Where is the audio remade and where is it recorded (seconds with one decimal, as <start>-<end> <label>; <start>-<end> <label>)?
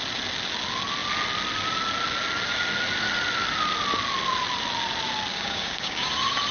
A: 0.0-5.3 recorded; 5.3-6.1 remade; 6.1-6.5 recorded